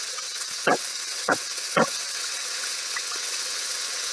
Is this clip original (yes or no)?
no